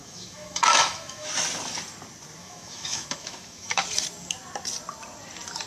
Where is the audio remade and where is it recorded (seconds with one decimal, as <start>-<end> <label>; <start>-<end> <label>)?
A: 0.0-1.3 remade; 1.3-2.4 recorded; 2.4-3.8 remade; 3.8-5.7 recorded